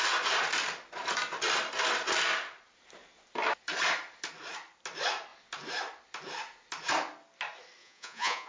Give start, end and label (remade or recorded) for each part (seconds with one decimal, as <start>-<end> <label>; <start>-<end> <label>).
0.0-7.8 recorded; 7.8-8.5 remade